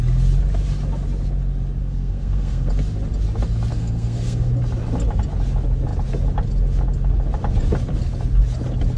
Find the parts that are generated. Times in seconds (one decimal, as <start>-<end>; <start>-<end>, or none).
1.8-2.7; 3.7-4.5